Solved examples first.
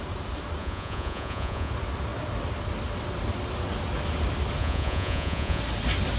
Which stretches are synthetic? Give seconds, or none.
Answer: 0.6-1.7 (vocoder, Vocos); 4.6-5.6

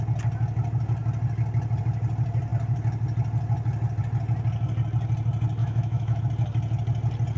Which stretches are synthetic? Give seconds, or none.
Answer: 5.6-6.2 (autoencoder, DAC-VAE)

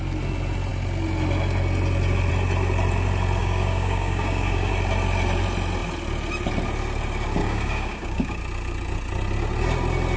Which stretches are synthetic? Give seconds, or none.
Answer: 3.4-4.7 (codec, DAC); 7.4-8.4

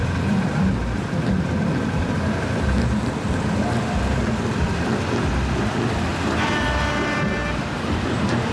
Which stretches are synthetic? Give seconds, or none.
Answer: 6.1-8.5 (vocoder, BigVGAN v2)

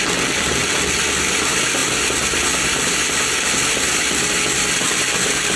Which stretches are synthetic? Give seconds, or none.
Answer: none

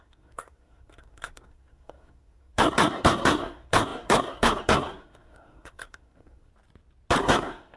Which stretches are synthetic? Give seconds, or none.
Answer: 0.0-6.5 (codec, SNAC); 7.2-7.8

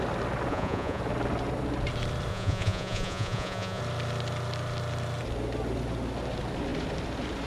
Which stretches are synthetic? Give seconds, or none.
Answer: 0.5-1.0 (vocoder, Vocos); 2.3-3.8

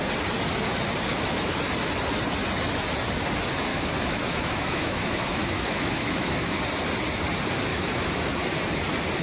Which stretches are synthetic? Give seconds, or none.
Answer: 1.1-1.6 (autoencoder, DAC-VAE); 3.7-6.6; 7.7-8.2